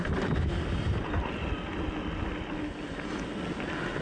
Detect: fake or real real